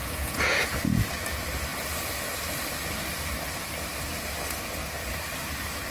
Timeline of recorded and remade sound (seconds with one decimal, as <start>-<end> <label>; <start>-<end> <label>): 0.0-1.1 remade; 1.1-5.9 recorded